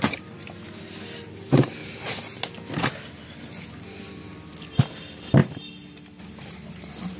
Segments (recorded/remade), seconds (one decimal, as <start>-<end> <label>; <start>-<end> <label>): 0.0-7.2 recorded